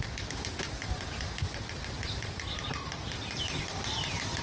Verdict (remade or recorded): recorded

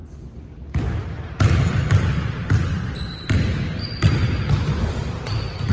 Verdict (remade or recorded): remade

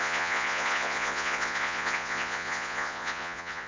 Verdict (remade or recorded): remade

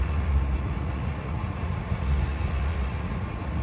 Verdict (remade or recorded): remade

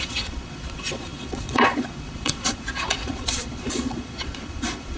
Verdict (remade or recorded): remade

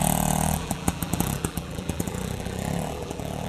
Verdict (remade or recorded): remade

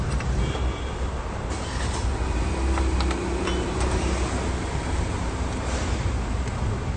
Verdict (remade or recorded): recorded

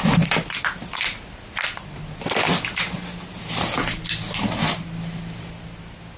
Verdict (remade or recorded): recorded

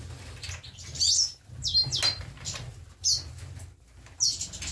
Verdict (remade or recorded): recorded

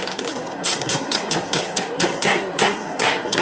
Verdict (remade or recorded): remade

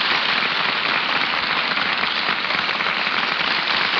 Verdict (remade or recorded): recorded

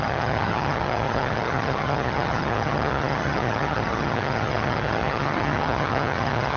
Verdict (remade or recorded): remade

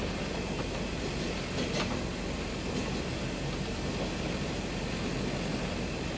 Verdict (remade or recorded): recorded